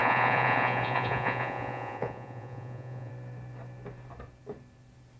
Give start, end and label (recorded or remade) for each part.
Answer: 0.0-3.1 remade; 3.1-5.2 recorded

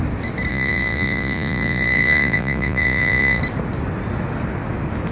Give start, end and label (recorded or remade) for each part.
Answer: 0.0-0.5 recorded; 0.5-3.4 remade; 3.4-5.1 recorded

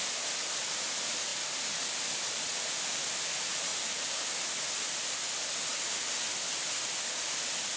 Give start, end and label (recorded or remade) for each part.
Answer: 0.0-7.8 recorded

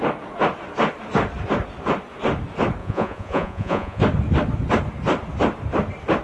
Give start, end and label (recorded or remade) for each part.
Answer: 0.0-2.8 recorded; 2.8-4.0 remade; 4.0-6.2 recorded

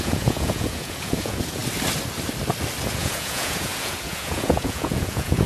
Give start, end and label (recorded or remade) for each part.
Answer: 0.0-1.6 remade; 1.6-2.9 recorded; 2.9-5.5 remade